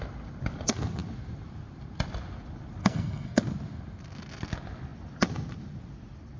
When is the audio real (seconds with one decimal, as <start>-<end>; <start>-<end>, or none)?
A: 0.0-2.8; 3.4-6.4